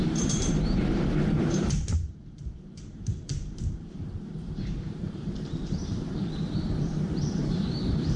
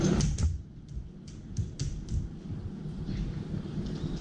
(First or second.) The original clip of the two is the second